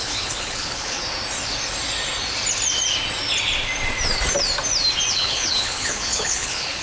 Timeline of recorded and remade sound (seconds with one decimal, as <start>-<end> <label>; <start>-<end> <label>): 0.0-1.0 remade; 1.0-5.1 recorded; 5.1-6.8 remade